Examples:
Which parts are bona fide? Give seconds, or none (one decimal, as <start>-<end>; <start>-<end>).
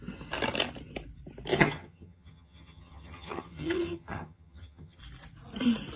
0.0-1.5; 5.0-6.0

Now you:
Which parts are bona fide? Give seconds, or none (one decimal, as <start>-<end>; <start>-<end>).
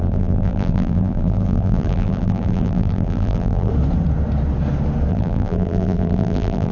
3.7-5.1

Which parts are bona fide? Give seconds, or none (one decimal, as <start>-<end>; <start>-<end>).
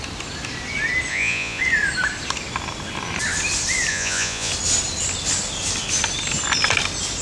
0.0-1.1; 1.6-3.9; 4.5-7.2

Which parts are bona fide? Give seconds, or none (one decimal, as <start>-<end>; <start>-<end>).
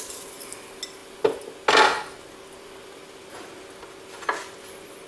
0.0-5.1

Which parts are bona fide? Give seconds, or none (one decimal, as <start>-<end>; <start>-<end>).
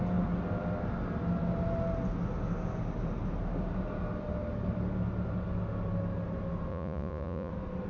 0.0-6.7; 7.5-7.9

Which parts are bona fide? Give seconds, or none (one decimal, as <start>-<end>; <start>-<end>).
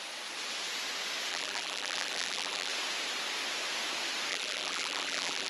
0.0-1.3; 2.7-4.3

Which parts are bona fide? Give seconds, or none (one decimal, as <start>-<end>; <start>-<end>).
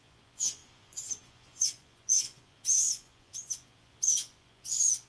none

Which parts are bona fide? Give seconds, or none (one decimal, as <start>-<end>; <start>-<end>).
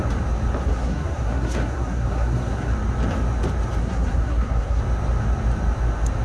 0.0-0.6; 2.7-3.8; 4.8-6.2